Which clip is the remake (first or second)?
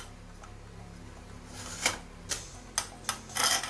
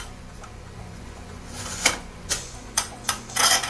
second